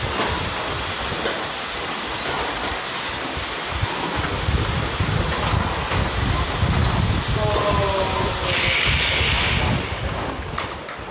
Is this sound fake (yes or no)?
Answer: no